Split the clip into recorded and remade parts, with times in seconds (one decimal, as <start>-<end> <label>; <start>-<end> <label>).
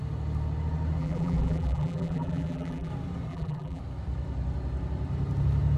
0.0-1.0 recorded; 1.0-2.9 remade; 2.9-3.3 recorded; 3.3-3.8 remade; 3.8-5.8 recorded